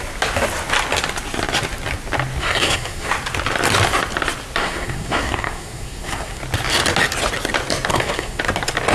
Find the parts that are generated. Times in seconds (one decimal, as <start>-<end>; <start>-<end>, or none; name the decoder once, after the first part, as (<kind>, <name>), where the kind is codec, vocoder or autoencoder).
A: 2.4-3.1 (codec, SNAC); 4.6-6.4; 7.9-8.4